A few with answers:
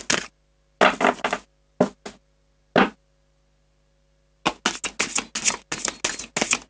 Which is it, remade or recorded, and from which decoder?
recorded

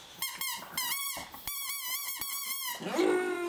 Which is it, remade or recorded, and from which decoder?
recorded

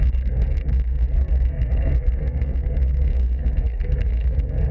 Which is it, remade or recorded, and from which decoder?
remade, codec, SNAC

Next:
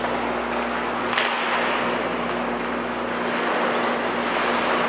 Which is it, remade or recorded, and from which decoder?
recorded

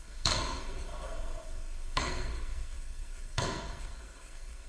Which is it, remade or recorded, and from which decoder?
remade, codec, SNAC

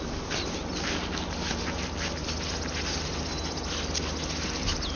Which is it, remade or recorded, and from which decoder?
recorded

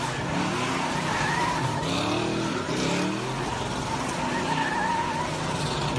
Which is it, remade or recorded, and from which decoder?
recorded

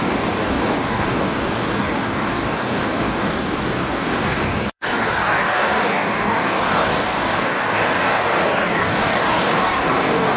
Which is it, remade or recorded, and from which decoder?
remade, codec, DAC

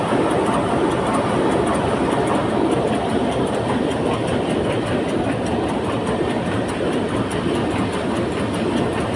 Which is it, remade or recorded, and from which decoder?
recorded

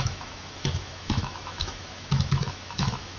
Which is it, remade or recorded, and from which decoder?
remade, autoencoder, DAC-VAE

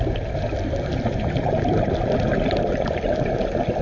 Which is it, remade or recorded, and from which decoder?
recorded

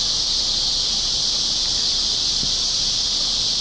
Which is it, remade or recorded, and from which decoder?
remade, vocoder, BigVGAN v2